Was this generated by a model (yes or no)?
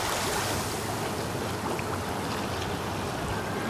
no